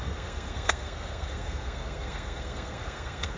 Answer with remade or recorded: remade